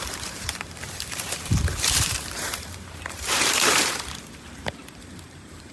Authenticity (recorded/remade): remade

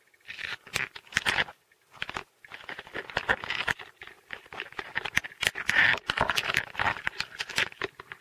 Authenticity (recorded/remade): recorded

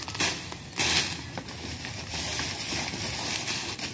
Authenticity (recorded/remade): recorded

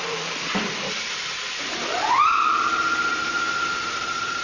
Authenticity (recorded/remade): remade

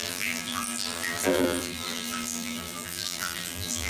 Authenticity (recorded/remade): remade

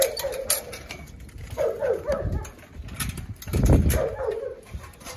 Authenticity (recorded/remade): recorded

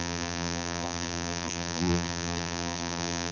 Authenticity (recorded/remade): remade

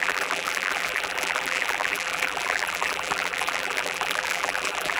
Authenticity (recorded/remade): remade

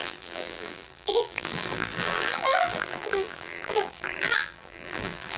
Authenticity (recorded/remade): remade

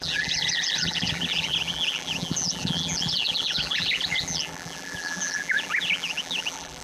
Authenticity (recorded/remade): remade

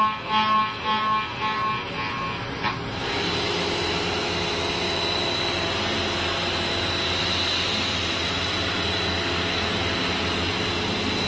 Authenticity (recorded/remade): recorded